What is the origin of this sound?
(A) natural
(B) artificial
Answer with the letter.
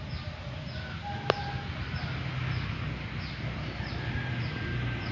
A